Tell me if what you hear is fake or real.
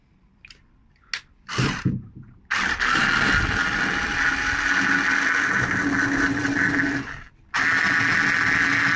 real